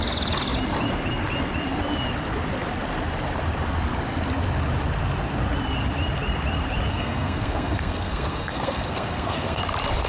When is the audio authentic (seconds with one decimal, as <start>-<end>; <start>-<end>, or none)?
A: 0.0-6.9; 9.6-10.1